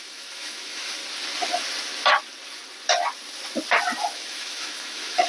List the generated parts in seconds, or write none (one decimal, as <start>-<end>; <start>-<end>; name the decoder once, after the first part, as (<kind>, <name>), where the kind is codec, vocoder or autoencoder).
0.0-1.0 (autoencoder, DAC-VAE); 4.0-5.3